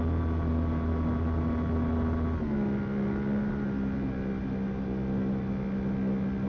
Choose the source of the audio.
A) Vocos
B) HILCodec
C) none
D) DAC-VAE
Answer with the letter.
C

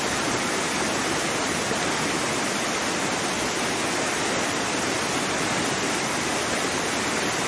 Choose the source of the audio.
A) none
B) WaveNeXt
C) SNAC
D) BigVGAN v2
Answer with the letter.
A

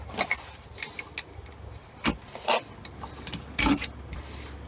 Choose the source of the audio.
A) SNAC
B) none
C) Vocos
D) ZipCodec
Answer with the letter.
B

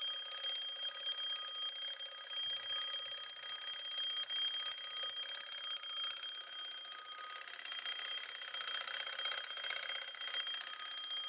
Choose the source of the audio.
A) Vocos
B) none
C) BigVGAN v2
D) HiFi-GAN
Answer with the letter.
B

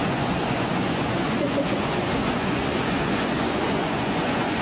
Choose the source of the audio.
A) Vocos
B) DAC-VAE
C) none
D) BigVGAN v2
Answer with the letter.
A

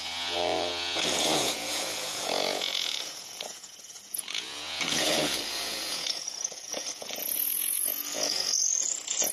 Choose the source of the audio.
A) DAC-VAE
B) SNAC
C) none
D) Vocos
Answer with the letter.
D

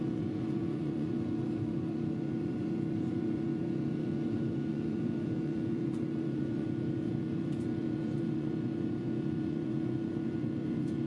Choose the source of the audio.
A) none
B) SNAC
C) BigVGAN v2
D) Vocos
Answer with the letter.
D